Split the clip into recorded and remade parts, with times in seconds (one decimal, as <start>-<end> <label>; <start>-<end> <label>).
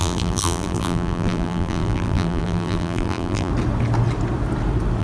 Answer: 0.0-3.5 remade; 3.5-5.0 recorded